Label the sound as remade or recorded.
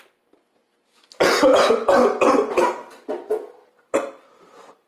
recorded